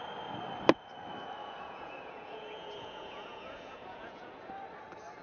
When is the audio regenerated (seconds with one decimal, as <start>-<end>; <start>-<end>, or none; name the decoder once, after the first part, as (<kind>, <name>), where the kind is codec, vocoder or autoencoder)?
1.4-4.5 (vocoder, Vocos)